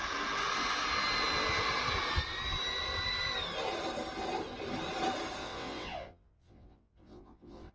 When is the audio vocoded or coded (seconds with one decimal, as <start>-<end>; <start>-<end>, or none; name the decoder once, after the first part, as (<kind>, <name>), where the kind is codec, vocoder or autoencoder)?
5.4-7.7 (vocoder, WaveNeXt)